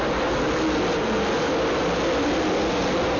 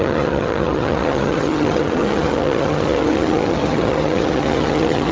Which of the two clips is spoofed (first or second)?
second